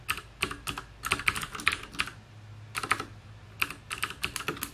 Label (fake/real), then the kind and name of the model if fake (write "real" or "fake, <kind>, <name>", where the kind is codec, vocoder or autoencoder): real